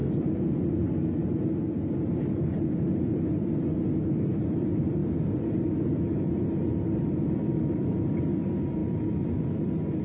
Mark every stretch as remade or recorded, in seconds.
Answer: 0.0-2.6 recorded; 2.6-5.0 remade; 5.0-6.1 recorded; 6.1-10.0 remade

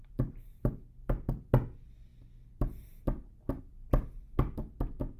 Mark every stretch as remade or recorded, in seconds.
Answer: 0.0-0.7 remade; 0.7-5.2 recorded

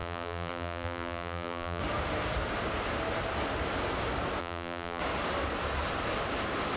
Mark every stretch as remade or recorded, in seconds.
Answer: 0.0-1.8 remade; 1.8-4.4 recorded; 4.4-5.0 remade; 5.0-6.8 recorded